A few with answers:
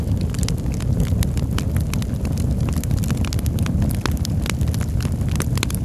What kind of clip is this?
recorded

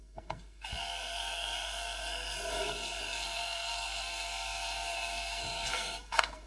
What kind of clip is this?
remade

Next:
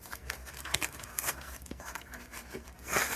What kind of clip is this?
remade